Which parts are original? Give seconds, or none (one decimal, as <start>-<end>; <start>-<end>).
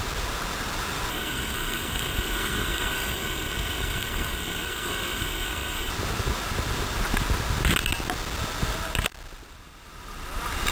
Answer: 0.0-1.1; 5.9-10.7